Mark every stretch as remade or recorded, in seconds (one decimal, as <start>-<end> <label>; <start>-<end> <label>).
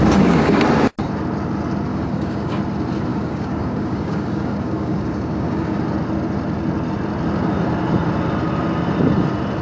0.0-0.6 remade; 0.6-1.9 recorded; 1.9-2.6 remade; 2.6-3.1 recorded; 3.1-5.8 remade; 5.8-9.6 recorded